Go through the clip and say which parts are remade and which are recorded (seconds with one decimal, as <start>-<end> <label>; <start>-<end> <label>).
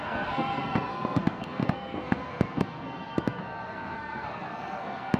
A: 0.0-5.2 remade